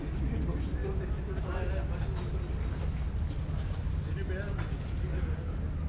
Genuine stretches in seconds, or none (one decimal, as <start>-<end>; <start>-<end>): 0.0-5.9